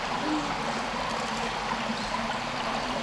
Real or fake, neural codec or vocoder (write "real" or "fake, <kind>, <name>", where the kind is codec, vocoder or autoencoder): real